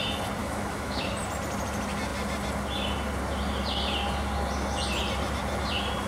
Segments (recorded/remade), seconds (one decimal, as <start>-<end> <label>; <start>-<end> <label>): 0.0-0.4 recorded; 0.4-1.0 remade; 1.0-6.1 recorded